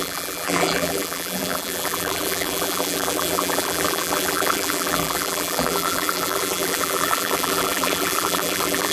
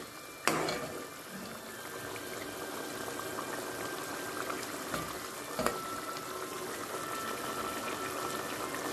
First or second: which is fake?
first